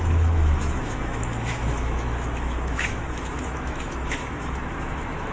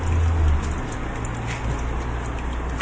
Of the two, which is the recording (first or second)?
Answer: second